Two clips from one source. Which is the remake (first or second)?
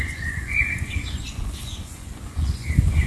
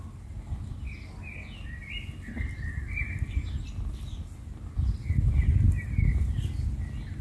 first